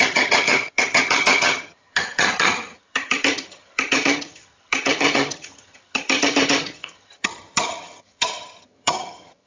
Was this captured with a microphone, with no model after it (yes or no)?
no